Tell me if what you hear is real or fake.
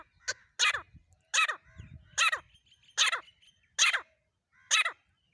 real